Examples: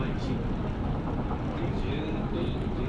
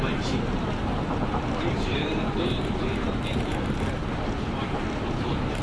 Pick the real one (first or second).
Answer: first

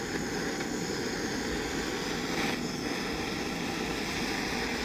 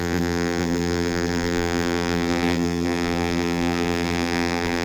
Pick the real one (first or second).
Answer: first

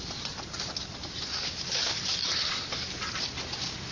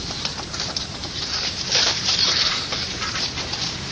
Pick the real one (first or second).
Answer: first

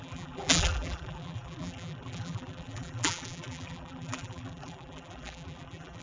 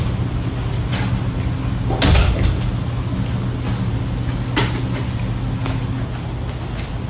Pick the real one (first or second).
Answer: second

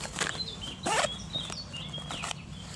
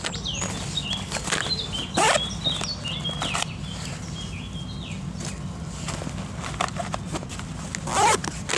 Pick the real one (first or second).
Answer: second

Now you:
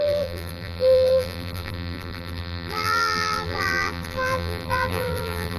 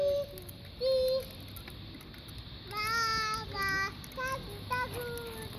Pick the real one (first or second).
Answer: second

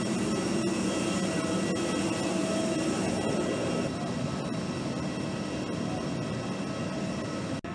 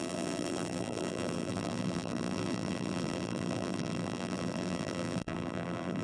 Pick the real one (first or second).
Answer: first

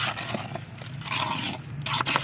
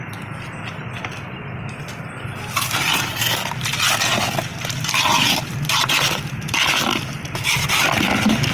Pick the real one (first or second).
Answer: first